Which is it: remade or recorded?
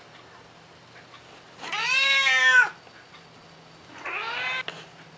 recorded